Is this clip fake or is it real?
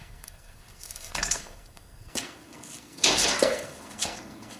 fake